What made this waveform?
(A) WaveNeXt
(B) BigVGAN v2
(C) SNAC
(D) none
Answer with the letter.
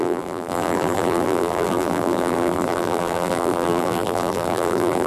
B